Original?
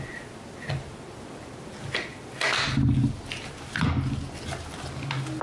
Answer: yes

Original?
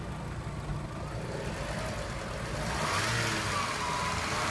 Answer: yes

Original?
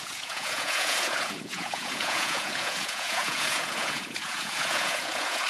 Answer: no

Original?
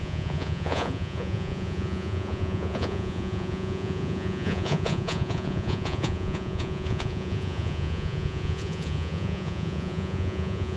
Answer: no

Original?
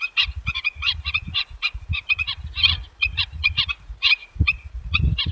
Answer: no